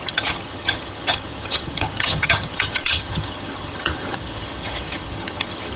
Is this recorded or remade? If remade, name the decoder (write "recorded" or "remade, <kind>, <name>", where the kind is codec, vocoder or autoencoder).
remade, vocoder, HiFi-GAN